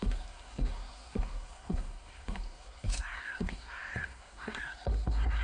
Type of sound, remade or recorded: remade